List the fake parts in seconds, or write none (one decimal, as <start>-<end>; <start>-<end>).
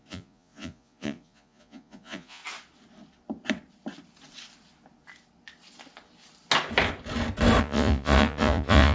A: 0.0-2.4; 7.6-8.9